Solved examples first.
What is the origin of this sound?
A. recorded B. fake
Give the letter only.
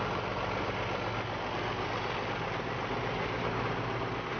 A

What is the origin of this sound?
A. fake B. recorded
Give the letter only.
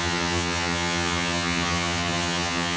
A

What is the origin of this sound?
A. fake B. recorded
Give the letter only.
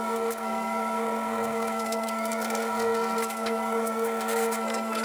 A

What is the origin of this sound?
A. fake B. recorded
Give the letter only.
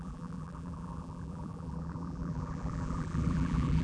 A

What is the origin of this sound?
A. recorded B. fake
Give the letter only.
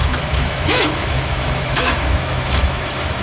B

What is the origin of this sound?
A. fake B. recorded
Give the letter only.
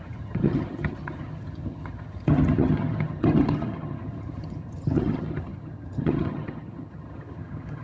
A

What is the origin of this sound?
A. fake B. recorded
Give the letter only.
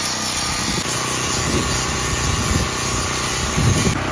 B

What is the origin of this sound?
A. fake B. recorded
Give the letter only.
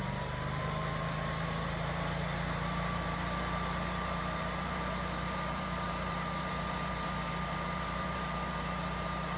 A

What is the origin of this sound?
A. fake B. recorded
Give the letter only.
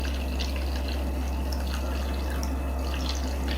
B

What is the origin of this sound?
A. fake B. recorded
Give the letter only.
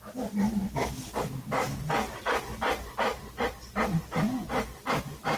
B